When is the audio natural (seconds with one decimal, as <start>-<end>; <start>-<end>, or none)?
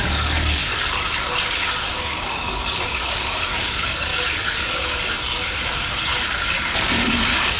0.6-2.0; 4.1-6.8